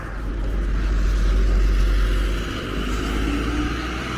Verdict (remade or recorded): recorded